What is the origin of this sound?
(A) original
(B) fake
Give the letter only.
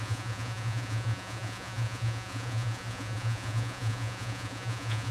B